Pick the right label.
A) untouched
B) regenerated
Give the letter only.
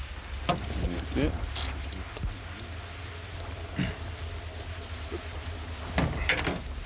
A